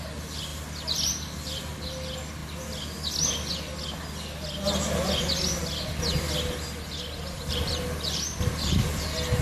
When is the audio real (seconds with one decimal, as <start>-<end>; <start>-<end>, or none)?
2.4-7.5